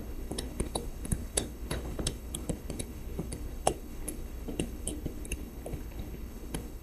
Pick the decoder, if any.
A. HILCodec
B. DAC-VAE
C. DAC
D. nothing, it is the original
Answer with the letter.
A